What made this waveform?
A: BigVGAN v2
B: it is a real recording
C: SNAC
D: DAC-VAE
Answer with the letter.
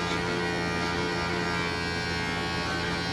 B